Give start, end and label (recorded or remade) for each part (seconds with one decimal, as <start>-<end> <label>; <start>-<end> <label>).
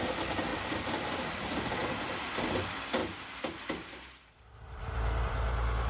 0.0-0.5 recorded; 0.5-1.7 remade; 1.7-3.0 recorded; 3.0-4.8 remade; 4.8-5.9 recorded